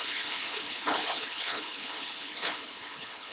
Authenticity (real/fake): fake